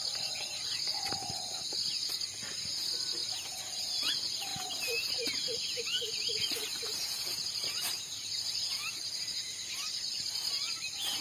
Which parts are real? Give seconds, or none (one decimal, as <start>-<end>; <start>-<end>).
0.0-7.0; 9.6-11.2